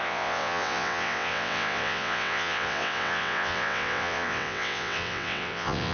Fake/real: fake